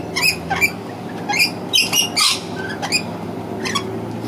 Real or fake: real